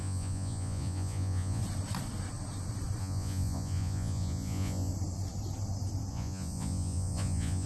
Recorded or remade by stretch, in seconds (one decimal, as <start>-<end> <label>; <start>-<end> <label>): 0.0-1.6 remade; 1.6-3.0 recorded; 3.0-4.9 remade; 4.9-6.1 recorded; 6.1-7.7 remade

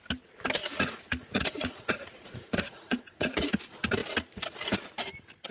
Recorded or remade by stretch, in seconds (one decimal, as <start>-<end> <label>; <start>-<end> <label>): 0.0-0.6 recorded; 0.6-3.5 remade; 3.5-5.5 recorded

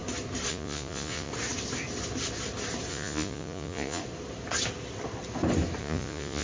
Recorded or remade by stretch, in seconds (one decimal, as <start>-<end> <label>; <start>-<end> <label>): 0.0-0.5 recorded; 0.5-1.3 remade; 1.3-2.9 recorded; 2.9-4.0 remade; 4.0-5.8 recorded; 5.8-6.4 remade

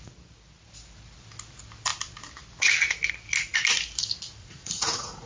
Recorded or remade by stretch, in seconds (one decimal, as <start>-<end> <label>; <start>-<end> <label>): 0.0-4.4 recorded; 4.4-5.3 remade

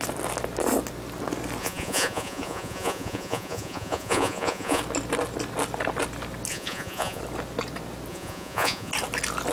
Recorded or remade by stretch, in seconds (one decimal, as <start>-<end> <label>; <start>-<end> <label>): 0.0-1.6 recorded; 1.6-4.8 remade; 4.8-6.5 recorded; 6.5-7.2 remade; 7.2-8.1 recorded; 8.1-8.9 remade; 8.9-9.5 recorded

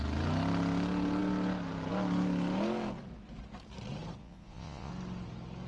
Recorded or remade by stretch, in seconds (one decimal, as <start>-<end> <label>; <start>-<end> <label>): 0.0-4.2 recorded; 4.2-4.9 remade; 4.9-5.7 recorded